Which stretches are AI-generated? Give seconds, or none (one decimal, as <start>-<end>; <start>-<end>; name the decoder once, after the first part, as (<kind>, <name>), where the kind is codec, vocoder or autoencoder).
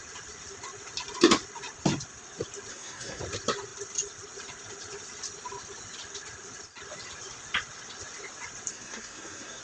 2.7-3.2 (codec, SNAC); 8.7-9.6